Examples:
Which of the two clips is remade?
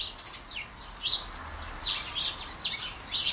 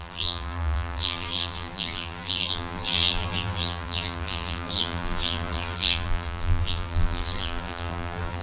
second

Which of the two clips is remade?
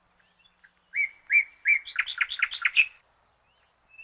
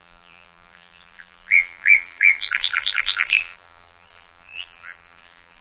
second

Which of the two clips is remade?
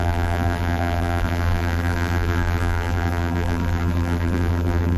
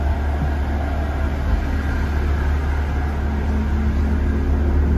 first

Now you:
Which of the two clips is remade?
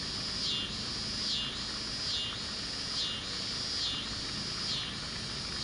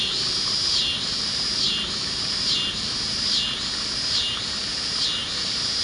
second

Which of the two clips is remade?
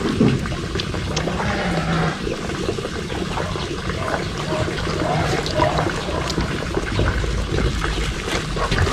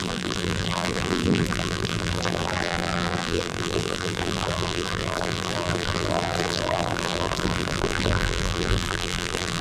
second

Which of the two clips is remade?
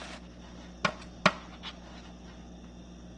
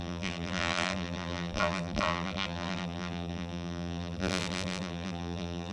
second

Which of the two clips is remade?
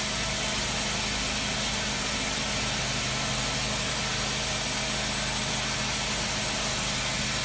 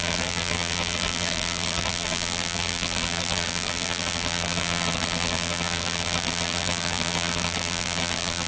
second